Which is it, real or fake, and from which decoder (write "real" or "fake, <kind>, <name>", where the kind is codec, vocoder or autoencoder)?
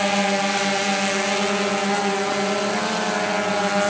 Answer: real